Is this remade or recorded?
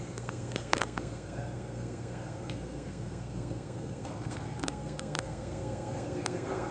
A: remade